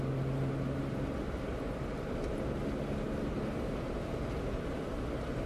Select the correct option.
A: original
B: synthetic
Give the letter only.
A